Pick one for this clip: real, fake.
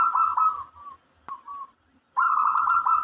real